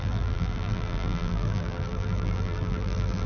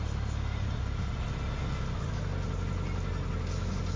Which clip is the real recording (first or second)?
second